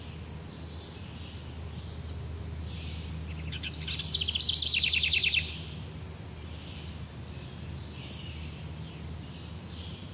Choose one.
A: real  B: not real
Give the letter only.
A